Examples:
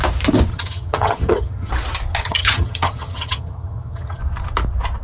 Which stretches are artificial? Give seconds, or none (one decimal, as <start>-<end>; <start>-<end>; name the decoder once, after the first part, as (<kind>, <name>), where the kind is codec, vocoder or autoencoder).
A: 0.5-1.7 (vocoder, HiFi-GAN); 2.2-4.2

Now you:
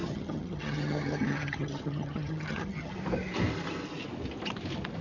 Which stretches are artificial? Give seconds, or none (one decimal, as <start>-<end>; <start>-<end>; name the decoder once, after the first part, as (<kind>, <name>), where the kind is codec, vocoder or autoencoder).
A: 0.0-3.0 (vocoder, HiFi-GAN)

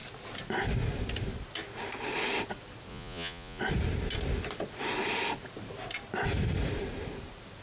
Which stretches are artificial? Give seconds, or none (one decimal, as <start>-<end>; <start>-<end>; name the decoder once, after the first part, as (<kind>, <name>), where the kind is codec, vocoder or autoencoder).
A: 2.9-3.6 (vocoder, Vocos)

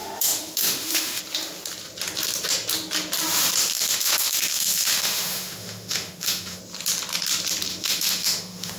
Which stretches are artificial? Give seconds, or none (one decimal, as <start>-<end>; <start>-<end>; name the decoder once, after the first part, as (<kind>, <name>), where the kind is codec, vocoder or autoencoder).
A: 0.0-1.2 (autoencoder, DAC-VAE); 3.6-6.6; 7.7-8.8

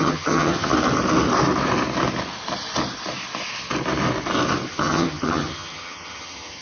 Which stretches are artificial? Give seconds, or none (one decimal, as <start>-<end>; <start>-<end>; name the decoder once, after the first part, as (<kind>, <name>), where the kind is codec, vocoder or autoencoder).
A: 0.0-0.7 (vocoder, HiFi-GAN); 4.7-6.6

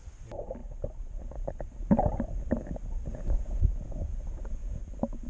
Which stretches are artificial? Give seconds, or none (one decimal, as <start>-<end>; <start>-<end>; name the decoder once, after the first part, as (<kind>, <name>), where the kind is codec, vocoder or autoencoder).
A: 3.1-4.8 (vocoder, Vocos)

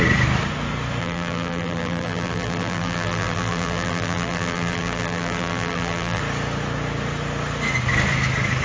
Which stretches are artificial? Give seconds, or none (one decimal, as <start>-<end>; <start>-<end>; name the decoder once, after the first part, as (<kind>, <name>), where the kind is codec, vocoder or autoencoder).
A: 1.0-6.2 (vocoder, BigVGAN v2)